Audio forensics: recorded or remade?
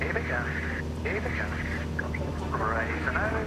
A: recorded